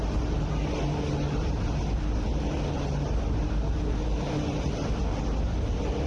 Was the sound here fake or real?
real